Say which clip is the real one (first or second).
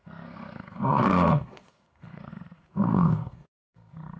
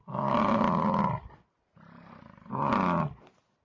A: second